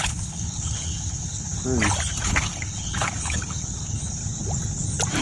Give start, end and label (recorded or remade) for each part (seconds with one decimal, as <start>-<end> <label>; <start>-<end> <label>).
0.0-1.5 remade; 1.5-2.2 recorded; 2.2-4.2 remade; 4.2-5.2 recorded

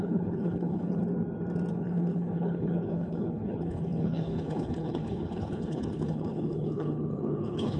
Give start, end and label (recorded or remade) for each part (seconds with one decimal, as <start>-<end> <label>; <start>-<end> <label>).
0.0-1.0 remade; 1.0-1.7 recorded; 1.7-7.8 remade

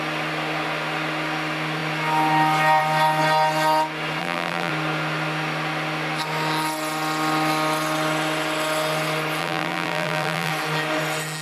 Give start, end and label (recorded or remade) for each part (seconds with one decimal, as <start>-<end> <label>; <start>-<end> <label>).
0.0-4.2 recorded; 4.2-4.7 remade; 4.7-9.4 recorded; 9.4-10.5 remade; 10.5-11.4 recorded

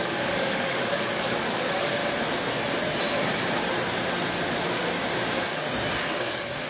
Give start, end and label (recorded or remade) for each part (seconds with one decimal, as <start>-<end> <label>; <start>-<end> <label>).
0.0-2.0 remade; 2.0-6.0 recorded; 6.0-6.7 remade

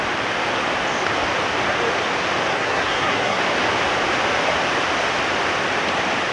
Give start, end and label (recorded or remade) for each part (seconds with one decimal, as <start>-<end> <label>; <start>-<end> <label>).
0.0-2.5 recorded; 2.5-3.4 remade; 3.4-6.3 recorded

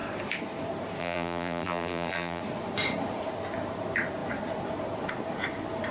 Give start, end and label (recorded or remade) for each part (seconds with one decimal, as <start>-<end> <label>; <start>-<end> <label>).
0.0-1.0 recorded; 1.0-2.4 remade; 2.4-5.9 recorded